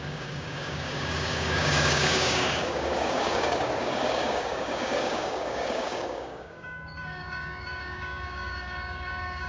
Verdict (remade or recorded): remade